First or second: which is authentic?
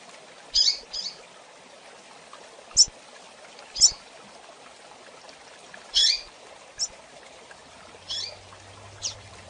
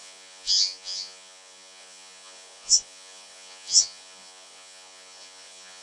first